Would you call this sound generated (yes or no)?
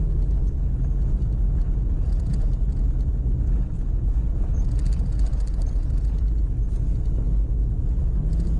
no